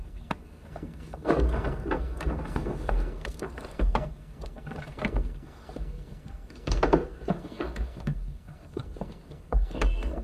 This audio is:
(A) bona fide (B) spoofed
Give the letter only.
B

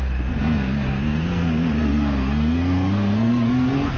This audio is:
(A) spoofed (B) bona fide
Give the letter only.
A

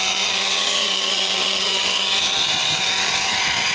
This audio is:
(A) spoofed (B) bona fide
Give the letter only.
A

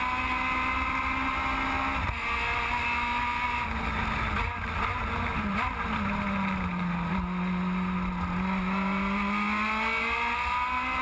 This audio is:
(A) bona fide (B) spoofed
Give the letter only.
A